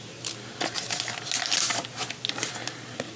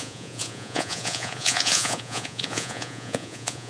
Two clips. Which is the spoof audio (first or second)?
second